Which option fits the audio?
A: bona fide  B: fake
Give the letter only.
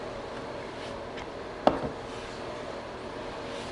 A